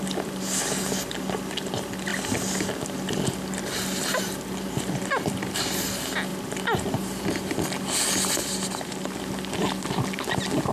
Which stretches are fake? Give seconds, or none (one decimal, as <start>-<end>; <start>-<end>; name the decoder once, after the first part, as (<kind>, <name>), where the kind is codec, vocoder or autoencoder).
none